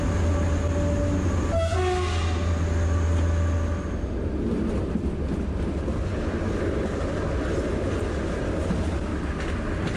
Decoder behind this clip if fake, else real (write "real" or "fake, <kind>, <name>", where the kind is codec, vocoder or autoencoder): real